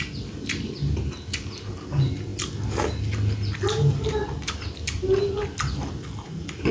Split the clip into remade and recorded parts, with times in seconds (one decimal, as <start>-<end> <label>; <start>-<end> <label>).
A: 0.0-6.7 recorded